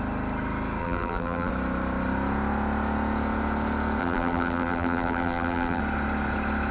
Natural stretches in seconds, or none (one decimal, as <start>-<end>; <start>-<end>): 0.0-0.8; 1.5-4.0; 5.8-6.7